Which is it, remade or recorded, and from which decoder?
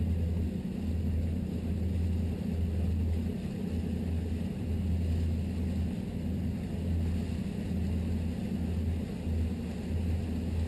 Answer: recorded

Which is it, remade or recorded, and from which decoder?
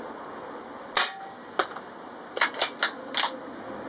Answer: recorded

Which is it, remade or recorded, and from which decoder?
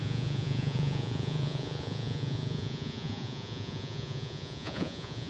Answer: remade, vocoder, Vocos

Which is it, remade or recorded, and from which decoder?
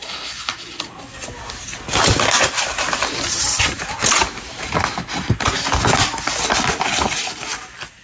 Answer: recorded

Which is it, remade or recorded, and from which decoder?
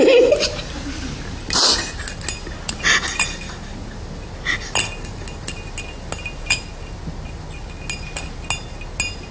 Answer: recorded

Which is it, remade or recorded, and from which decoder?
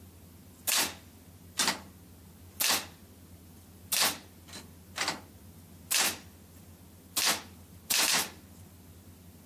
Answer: recorded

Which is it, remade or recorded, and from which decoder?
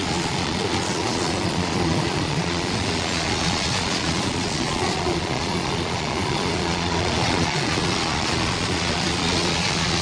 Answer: remade, vocoder, Vocos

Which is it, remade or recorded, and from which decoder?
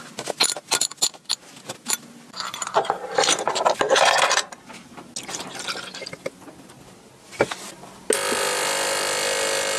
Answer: recorded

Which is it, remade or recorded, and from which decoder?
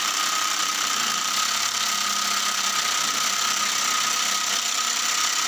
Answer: recorded